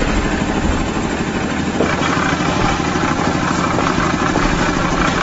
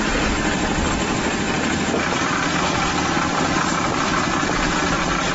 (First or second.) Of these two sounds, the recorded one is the first